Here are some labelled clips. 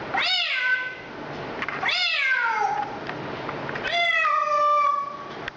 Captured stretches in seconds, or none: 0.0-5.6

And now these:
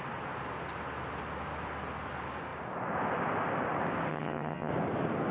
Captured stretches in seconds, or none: 0.0-4.1; 4.7-5.3

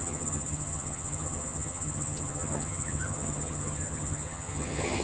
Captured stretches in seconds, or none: none

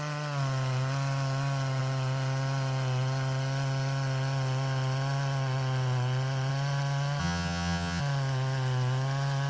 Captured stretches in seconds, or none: 0.0-7.2; 8.0-9.5

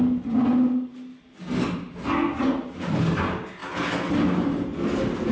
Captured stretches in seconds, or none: 0.0-5.3

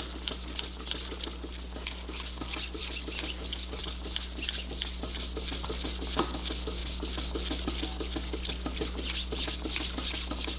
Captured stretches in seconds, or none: 0.0-10.6

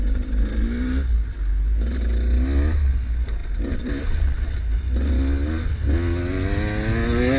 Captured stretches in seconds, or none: 0.0-7.4